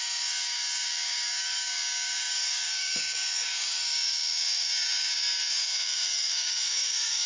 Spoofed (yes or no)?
yes